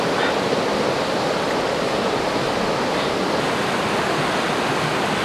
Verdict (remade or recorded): recorded